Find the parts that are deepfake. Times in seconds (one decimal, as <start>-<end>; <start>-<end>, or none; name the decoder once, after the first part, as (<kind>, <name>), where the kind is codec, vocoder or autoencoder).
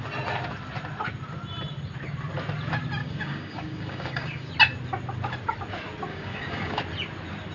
3.0-4.5 (codec, DAC); 6.1-6.8